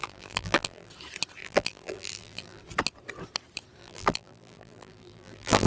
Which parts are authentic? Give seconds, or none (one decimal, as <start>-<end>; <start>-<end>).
0.9-1.4; 2.6-3.8